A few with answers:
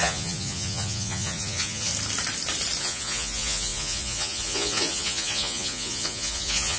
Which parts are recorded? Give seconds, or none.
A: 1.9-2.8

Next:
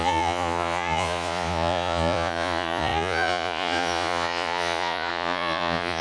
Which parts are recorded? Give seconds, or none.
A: none

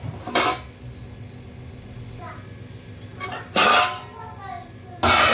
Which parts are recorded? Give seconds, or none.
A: 0.0-5.3

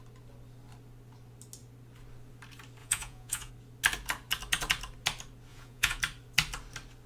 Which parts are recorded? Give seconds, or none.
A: 0.0-2.8; 3.5-5.5; 6.0-7.1

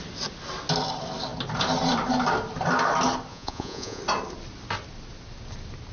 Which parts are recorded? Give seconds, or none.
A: 0.0-3.3; 4.0-5.9